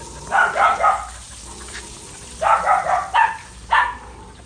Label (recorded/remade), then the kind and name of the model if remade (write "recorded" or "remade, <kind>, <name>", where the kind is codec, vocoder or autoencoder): recorded